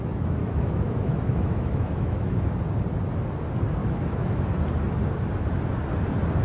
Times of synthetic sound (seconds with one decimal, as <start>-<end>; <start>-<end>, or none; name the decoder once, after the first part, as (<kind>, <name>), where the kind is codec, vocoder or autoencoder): 0.4-2.5 (autoencoder, DAC-VAE); 3.8-4.4